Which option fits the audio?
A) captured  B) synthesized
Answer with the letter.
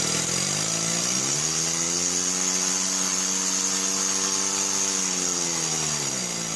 A